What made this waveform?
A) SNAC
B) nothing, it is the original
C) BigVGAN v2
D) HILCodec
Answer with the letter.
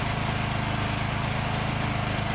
B